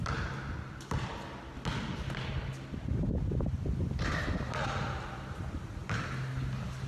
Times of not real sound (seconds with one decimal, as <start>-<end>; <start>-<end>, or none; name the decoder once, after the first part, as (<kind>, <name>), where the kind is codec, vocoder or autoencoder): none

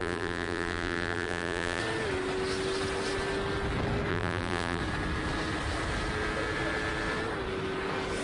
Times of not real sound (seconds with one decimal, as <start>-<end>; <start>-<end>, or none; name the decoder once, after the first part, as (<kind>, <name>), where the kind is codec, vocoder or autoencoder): 0.0-1.8 (vocoder, BigVGAN v2); 4.1-4.8

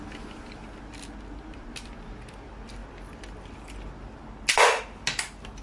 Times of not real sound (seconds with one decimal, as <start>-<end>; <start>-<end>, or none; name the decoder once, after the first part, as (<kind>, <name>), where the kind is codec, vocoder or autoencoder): none

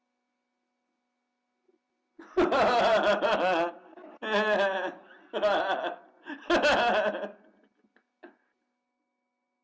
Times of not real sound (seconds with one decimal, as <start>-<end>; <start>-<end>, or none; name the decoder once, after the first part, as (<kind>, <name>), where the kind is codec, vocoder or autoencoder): 1.7-3.3 (vocoder, BigVGAN v2)